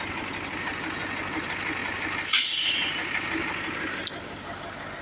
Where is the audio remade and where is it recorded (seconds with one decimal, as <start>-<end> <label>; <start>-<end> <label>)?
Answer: 0.0-5.0 recorded